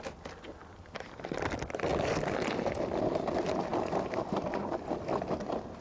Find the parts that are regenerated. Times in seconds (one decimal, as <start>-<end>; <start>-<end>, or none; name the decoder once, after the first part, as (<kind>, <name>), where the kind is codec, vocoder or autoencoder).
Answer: none